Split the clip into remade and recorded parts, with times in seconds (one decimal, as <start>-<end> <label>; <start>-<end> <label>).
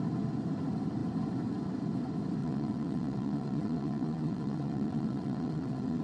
0.0-2.4 recorded; 2.4-6.0 remade